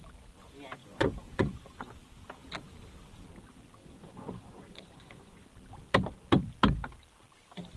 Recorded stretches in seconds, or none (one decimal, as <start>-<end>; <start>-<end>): 0.0-0.8; 1.9-3.8; 5.4-7.8